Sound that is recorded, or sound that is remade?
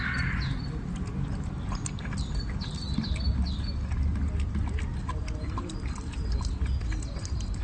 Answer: recorded